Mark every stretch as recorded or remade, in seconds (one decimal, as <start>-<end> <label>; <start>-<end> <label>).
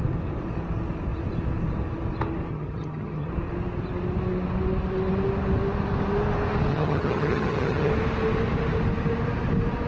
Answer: 0.0-2.5 recorded; 2.5-3.3 remade; 3.3-6.7 recorded; 6.7-7.9 remade; 7.9-9.9 recorded